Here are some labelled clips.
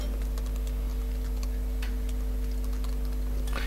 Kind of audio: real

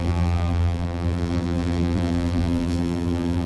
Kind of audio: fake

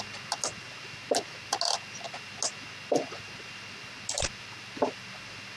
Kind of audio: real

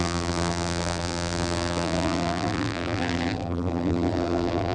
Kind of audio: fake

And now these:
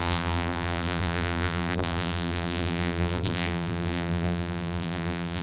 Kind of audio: fake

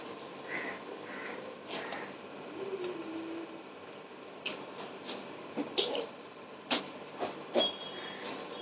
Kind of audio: fake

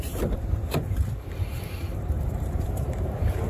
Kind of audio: fake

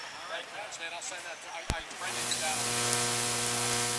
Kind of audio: fake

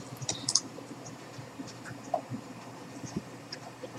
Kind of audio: fake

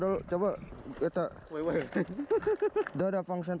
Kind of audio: real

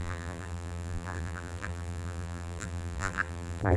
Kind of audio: fake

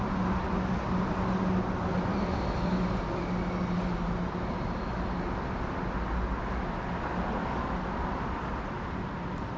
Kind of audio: real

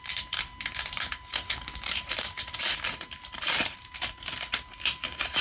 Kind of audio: fake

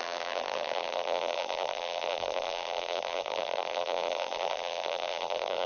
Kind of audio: fake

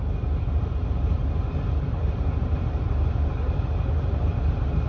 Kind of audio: fake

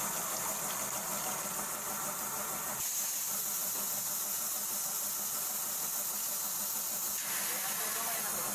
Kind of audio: real